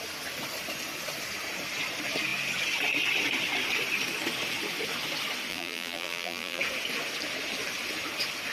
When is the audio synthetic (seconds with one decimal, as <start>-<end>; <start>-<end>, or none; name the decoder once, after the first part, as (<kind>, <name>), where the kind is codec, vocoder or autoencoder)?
5.5-6.6 (vocoder, BigVGAN v2)